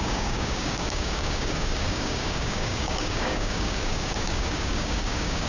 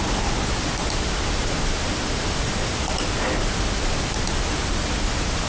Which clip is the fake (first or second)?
first